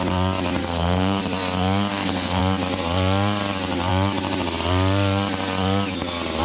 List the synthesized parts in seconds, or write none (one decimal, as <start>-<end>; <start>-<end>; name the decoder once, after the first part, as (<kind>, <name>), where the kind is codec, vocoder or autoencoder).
0.6-1.2 (codec, SNAC); 1.9-2.4